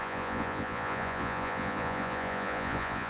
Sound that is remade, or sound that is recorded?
remade